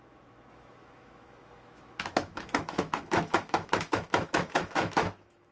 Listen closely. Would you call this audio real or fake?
fake